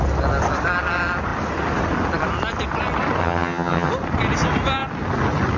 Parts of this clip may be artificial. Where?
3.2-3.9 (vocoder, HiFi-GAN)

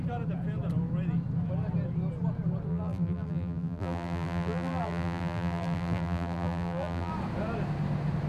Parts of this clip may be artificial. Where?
2.7-7.1 (vocoder, BigVGAN v2)

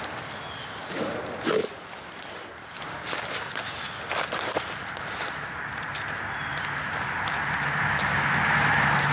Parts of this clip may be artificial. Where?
1.6-2.8 (vocoder, BigVGAN v2)

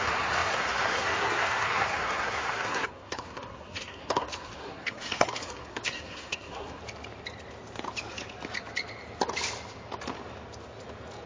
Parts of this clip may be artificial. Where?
0.0-6.8 (codec, SNAC)

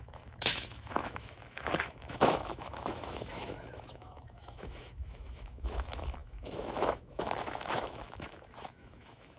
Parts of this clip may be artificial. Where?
0.0-9.4 (autoencoder, DAC-VAE)